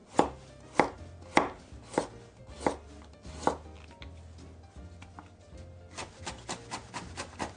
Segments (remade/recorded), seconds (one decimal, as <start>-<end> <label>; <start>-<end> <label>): 0.0-7.6 recorded